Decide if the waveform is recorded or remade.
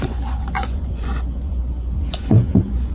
remade